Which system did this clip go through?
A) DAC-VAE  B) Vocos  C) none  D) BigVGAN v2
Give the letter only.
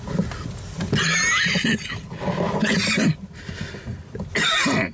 C